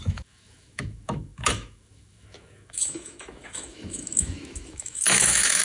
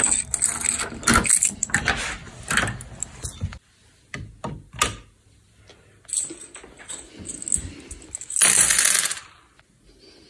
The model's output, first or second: first